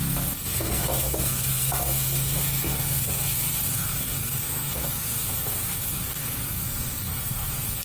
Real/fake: fake